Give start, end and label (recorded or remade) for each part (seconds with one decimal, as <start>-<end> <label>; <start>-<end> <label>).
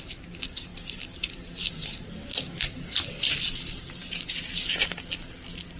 0.0-5.8 recorded